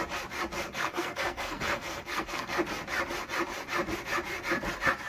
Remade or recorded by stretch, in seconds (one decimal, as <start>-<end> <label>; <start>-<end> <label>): 0.0-0.6 recorded; 0.6-2.6 remade; 2.6-5.1 recorded